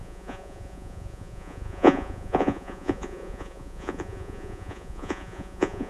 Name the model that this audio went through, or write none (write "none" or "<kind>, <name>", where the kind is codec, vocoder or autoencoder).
vocoder, Vocos